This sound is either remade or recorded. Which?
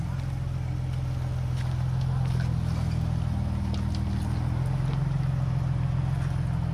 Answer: recorded